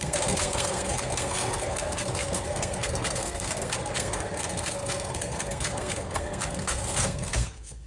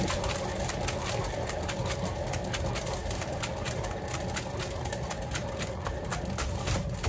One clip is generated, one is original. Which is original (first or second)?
second